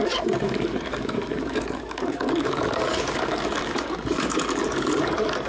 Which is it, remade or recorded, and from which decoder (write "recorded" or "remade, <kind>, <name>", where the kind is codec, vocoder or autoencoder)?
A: remade, codec, DAC